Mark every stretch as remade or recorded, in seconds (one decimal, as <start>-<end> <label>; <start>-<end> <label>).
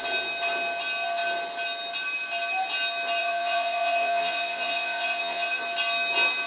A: 0.0-3.2 recorded; 3.2-5.6 remade; 5.6-6.5 recorded